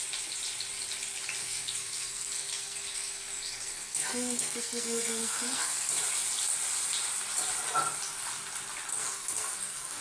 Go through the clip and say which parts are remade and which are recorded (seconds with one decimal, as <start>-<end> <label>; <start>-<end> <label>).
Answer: 0.0-1.4 recorded; 1.4-5.9 remade; 5.9-8.9 recorded; 8.9-10.0 remade